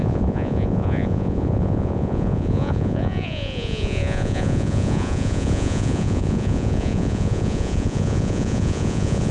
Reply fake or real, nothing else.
fake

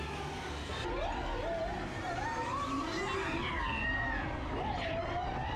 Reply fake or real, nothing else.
real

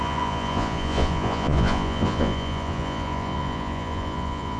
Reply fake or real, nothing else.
fake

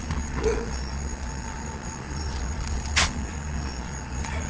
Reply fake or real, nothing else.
fake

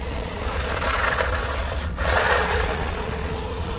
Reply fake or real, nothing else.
fake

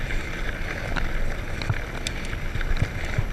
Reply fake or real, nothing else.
real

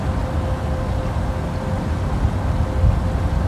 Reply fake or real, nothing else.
real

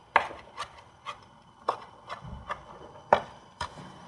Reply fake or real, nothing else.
real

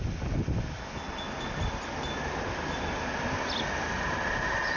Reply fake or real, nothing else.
real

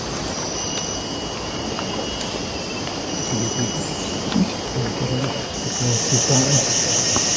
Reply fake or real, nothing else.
real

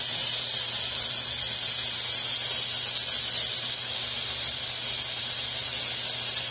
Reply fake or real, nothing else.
real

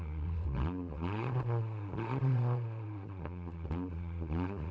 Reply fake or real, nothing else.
fake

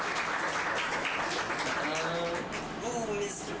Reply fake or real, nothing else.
real